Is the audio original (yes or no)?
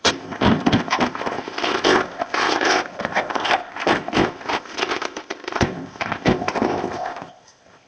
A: no